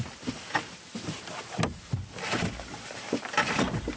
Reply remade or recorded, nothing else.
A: recorded